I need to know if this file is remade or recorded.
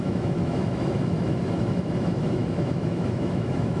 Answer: remade